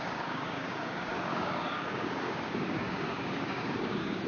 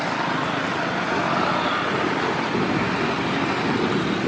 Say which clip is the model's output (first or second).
first